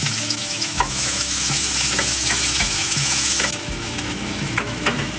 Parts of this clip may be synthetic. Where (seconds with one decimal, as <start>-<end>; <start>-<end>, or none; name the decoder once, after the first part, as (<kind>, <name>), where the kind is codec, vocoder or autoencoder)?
0.0-5.2 (autoencoder, DAC-VAE)